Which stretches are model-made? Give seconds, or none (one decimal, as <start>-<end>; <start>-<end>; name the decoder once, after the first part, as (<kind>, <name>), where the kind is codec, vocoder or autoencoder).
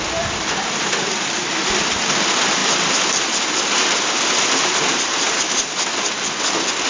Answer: none